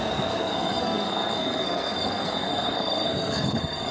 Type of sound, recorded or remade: remade